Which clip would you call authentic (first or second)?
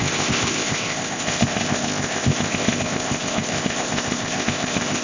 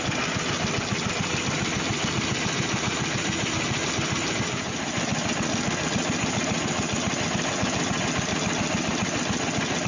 second